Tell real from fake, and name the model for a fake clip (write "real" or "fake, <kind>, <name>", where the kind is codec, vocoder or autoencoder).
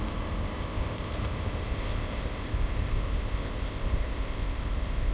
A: fake, codec, ZipCodec